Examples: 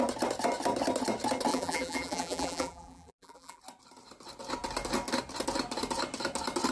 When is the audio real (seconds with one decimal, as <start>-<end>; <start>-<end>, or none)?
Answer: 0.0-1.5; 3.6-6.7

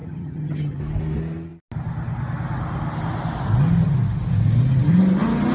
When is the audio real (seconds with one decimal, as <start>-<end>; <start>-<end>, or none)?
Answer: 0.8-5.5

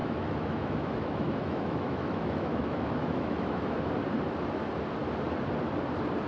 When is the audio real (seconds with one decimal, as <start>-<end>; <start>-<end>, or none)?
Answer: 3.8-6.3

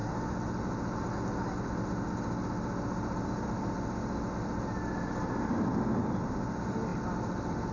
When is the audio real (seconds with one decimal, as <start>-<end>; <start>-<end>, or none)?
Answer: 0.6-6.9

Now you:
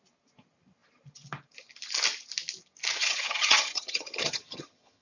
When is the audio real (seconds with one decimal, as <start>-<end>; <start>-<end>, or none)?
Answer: 0.0-3.0

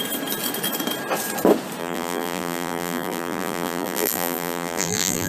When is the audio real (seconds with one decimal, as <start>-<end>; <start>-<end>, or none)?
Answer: 0.0-1.8